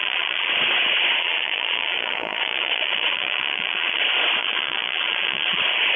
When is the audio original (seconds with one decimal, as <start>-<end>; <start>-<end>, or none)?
0.5-1.2; 4.0-4.4; 5.6-6.0